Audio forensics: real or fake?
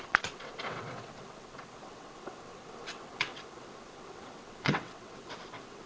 fake